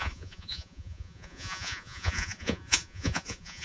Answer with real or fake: fake